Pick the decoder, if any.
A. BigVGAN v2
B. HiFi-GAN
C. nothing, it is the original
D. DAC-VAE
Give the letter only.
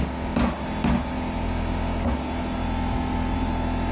C